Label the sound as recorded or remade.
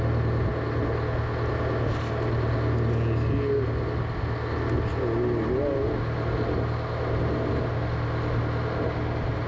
recorded